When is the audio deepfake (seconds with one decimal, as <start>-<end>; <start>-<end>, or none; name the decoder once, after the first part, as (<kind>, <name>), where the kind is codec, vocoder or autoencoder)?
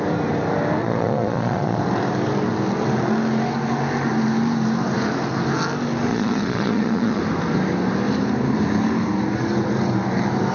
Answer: 0.8-1.8 (vocoder, Vocos); 6.1-7.2